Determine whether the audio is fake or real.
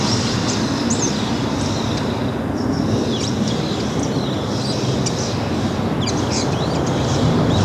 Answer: real